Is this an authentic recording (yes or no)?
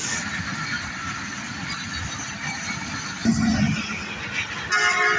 yes